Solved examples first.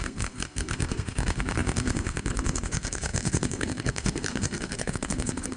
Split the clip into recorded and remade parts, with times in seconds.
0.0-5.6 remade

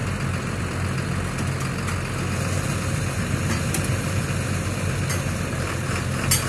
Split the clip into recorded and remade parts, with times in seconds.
0.0-6.5 recorded

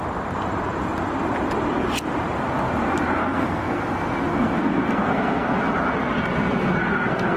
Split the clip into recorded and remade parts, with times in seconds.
0.0-3.2 recorded; 3.2-3.8 remade; 3.8-4.3 recorded; 4.3-5.6 remade; 5.6-6.8 recorded; 6.8-7.4 remade